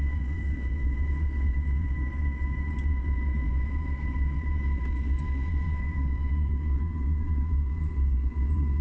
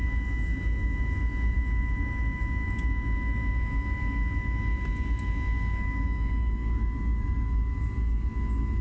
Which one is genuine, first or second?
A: second